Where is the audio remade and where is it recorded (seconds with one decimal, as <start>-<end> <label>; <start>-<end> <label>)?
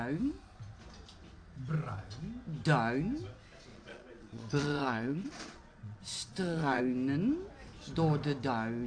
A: 0.0-3.7 recorded; 3.7-6.8 remade; 6.8-8.9 recorded